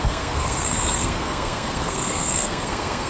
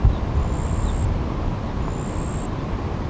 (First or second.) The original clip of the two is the second